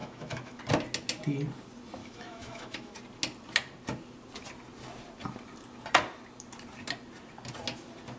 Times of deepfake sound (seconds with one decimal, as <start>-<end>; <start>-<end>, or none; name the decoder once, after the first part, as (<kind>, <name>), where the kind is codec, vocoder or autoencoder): 0.0-0.6 (autoencoder, DAC-VAE); 2.0-2.9